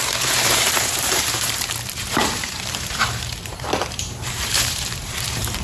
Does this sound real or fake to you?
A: fake